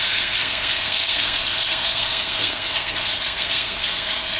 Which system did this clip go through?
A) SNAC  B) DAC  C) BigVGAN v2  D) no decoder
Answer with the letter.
A